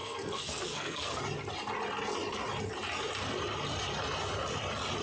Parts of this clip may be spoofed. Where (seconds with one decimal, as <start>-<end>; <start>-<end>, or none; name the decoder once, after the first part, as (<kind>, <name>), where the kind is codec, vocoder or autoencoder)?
0.0-1.2 (codec, SNAC)